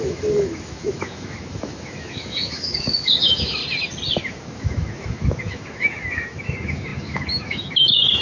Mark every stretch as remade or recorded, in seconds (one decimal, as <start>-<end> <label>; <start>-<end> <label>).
0.0-3.6 remade; 3.6-4.2 recorded; 4.2-8.2 remade